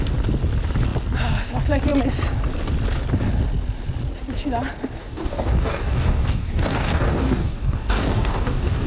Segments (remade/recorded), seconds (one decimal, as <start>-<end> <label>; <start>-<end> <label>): 0.0-5.0 recorded; 5.0-8.9 remade